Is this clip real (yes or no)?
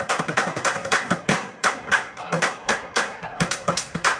no